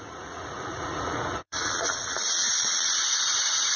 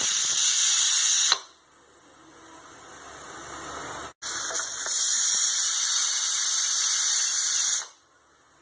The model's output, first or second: first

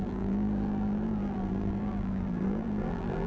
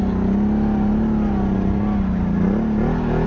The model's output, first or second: first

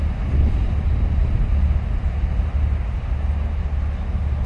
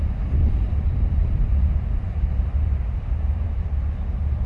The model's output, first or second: second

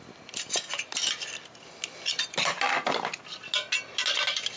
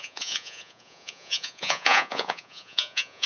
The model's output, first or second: second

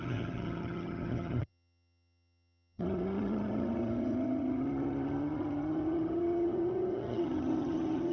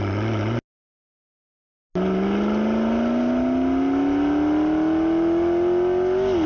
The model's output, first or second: first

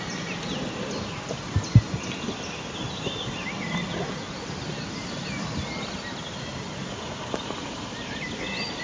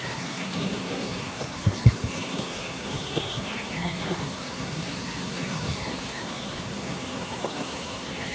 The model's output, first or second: second